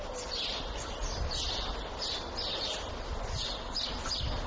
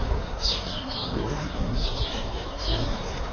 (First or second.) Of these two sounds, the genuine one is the first